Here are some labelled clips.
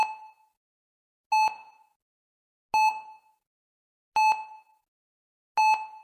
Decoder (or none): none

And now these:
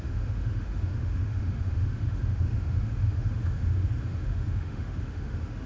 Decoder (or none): autoencoder, DAC-VAE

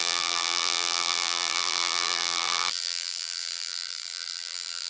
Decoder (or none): vocoder, BigVGAN v2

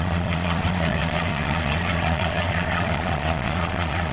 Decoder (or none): vocoder, Vocos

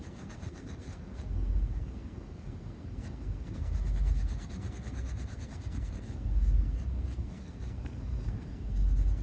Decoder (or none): codec, SNAC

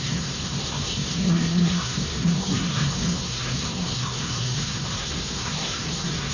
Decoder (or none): codec, SNAC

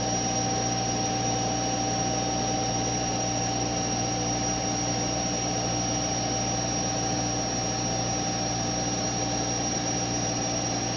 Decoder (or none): none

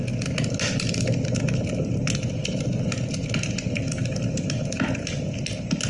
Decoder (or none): none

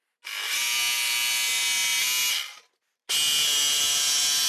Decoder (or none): none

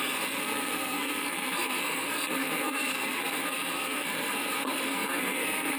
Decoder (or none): codec, SNAC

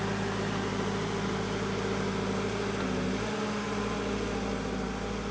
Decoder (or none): none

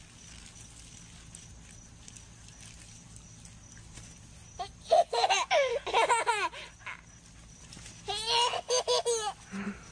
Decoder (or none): none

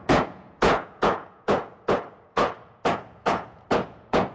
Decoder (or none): vocoder, Vocos